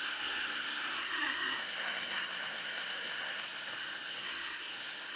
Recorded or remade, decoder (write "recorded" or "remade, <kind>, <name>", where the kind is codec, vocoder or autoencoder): remade, codec, SNAC